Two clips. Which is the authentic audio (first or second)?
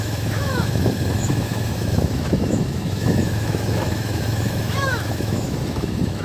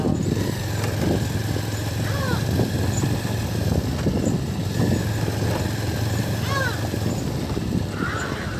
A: second